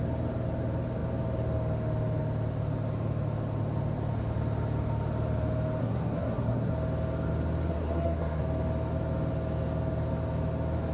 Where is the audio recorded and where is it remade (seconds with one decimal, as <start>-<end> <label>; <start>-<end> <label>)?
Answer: 0.0-5.8 recorded; 5.8-6.7 remade; 6.7-7.7 recorded; 7.7-8.4 remade; 8.4-10.9 recorded